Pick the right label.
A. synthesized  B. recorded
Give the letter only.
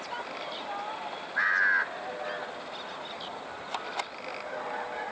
B